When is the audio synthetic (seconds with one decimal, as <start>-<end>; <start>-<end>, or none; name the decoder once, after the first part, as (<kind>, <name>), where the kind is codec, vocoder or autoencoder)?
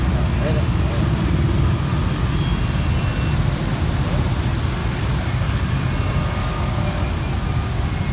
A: 4.8-5.7 (codec, DAC); 6.4-7.2